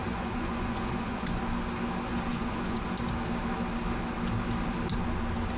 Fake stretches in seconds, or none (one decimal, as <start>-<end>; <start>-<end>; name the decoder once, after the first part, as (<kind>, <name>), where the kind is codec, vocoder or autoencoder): 0.0-1.4 (vocoder, Vocos); 2.3-2.8